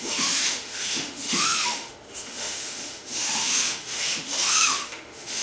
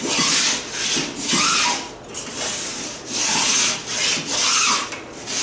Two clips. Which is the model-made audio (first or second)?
first